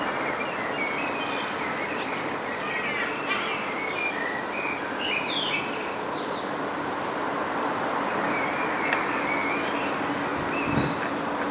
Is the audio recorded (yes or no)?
yes